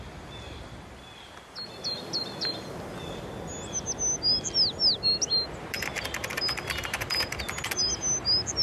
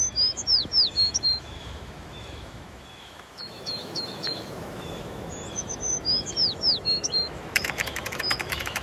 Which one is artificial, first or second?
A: second